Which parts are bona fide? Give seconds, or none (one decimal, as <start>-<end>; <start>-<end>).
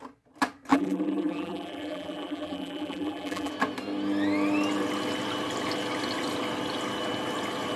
0.0-0.7; 3.5-7.8